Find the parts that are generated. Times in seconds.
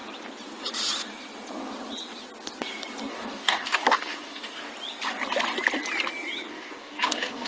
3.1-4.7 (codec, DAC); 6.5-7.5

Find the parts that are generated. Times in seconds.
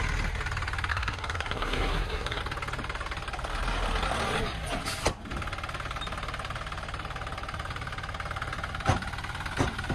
0.9-2.4 (codec, SNAC)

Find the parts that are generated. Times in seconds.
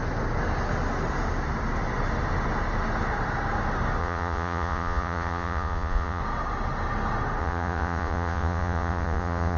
4.0-6.2 (vocoder, Vocos); 7.4-9.6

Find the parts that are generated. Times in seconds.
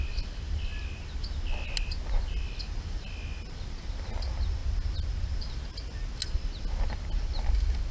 none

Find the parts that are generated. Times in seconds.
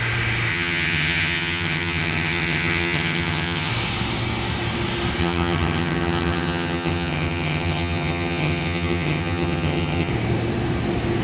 0.5-3.7 (vocoder, HiFi-GAN); 5.2-10.1